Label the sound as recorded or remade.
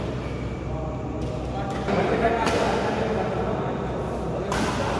recorded